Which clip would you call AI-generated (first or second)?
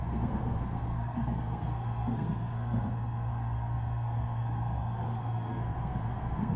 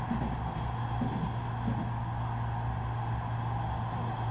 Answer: first